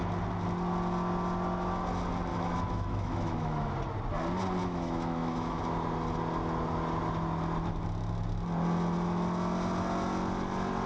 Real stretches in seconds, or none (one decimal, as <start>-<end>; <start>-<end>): 0.0-2.3; 3.7-4.6; 5.6-10.9